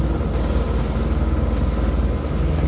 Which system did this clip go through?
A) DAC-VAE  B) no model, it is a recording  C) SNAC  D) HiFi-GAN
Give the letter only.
B